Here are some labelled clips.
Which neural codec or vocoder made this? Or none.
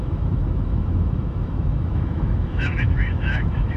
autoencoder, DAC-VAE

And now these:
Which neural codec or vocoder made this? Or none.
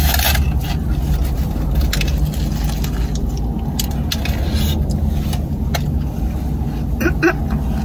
none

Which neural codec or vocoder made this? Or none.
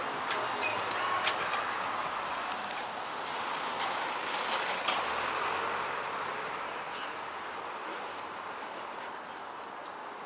none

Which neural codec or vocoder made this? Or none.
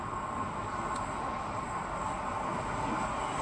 none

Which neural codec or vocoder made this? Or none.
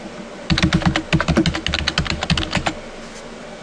none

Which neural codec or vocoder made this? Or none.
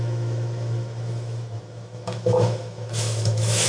autoencoder, DAC-VAE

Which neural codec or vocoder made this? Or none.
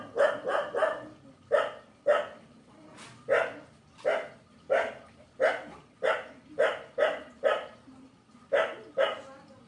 none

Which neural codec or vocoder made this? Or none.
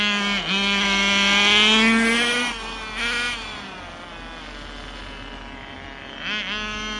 none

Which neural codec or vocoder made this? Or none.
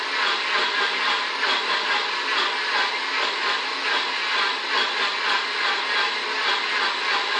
none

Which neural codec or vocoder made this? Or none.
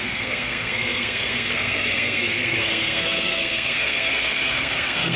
codec, SNAC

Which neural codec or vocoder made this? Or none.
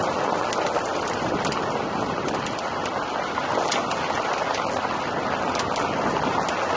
none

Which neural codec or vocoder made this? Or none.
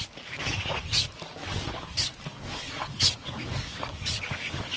codec, DAC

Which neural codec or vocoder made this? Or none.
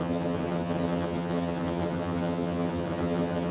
vocoder, HiFi-GAN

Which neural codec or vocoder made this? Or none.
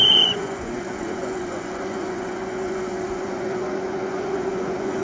vocoder, Vocos